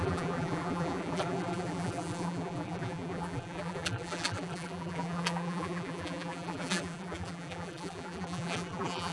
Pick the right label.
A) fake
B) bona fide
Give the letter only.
A